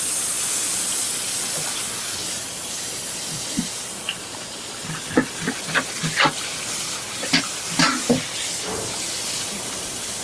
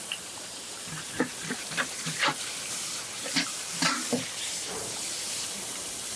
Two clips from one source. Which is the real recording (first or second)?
first